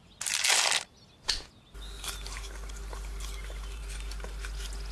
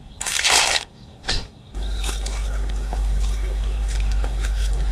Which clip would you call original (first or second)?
first